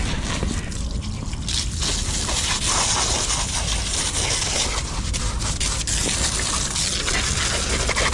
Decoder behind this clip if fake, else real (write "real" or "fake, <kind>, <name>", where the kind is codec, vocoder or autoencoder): real